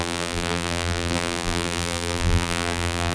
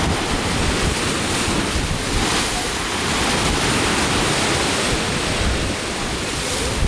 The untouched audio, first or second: second